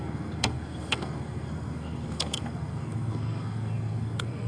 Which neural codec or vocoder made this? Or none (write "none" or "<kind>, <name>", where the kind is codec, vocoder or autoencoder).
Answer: codec, SNAC